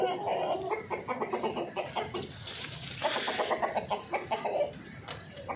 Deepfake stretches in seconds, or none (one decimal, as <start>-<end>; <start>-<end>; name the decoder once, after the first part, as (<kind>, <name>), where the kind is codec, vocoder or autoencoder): 1.1-4.5 (vocoder, BigVGAN v2)